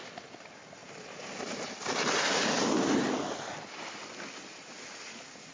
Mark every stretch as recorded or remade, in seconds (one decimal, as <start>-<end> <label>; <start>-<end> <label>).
0.0-5.5 recorded